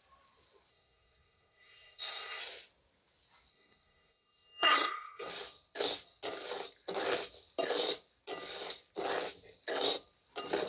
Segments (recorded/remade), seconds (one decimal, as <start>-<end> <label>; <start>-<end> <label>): 0.0-0.7 recorded; 0.7-2.4 remade; 2.4-3.5 recorded; 3.5-5.3 remade; 5.3-10.7 recorded